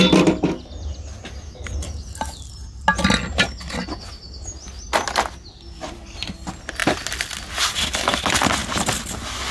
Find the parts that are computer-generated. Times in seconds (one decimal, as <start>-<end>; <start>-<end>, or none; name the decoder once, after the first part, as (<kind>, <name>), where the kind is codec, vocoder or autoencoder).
none